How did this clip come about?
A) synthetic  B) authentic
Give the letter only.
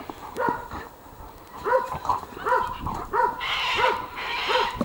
A